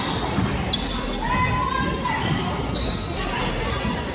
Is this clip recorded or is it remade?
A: recorded